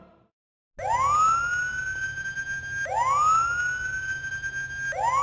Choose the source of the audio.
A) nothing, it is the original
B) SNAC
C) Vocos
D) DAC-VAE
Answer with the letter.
A